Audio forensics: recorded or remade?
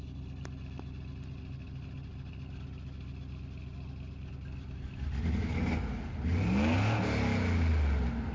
recorded